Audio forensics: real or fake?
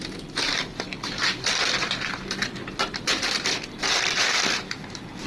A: fake